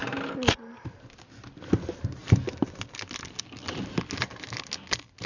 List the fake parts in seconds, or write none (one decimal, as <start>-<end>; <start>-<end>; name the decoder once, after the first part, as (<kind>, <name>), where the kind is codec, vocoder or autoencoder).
none